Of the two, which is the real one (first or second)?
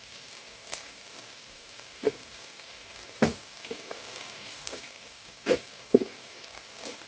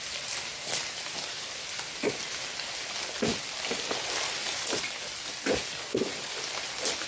second